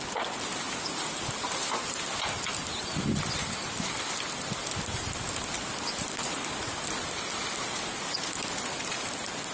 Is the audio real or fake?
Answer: real